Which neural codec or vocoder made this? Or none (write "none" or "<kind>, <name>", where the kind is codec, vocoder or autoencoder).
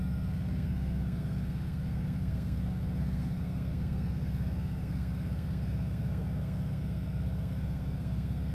codec, SNAC